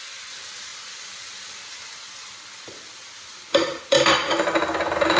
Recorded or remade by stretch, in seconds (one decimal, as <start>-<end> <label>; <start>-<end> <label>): 0.0-5.2 recorded